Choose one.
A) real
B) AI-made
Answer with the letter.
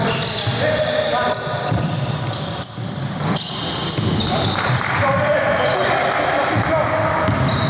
B